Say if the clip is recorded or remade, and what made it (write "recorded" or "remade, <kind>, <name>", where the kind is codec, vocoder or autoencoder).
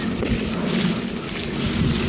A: recorded